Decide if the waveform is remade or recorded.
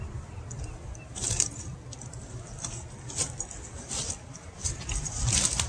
remade